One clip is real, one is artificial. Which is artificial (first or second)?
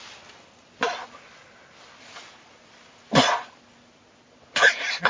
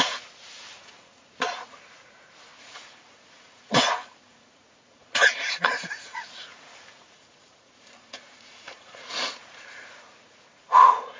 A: second